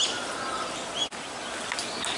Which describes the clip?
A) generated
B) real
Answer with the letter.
B